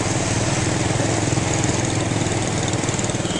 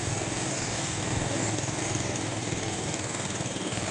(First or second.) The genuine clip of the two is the first